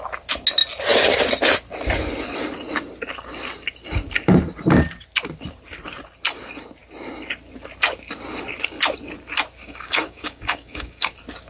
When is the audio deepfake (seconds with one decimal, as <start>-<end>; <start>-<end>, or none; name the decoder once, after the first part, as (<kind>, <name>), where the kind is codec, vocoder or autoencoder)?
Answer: 9.6-11.1 (codec, DAC)